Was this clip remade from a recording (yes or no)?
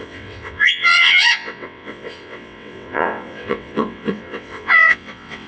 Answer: yes